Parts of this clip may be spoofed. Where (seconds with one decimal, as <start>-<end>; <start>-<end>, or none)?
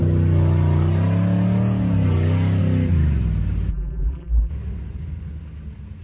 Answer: 3.7-4.5